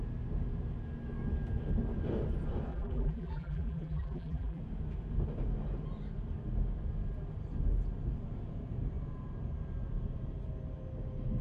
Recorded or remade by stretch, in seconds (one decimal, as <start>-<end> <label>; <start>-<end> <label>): 0.0-2.7 recorded; 2.7-4.6 remade; 4.6-11.4 recorded